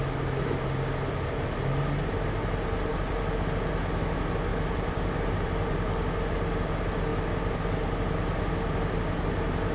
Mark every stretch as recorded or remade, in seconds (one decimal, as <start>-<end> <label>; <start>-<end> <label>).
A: 0.0-4.5 recorded; 4.5-6.3 remade; 6.3-9.7 recorded